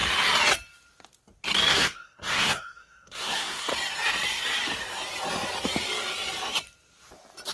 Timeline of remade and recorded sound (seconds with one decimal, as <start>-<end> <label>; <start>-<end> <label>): 0.0-1.7 recorded; 1.7-3.7 remade; 3.7-7.5 recorded